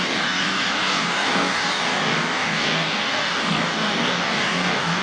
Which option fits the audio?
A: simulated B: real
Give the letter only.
A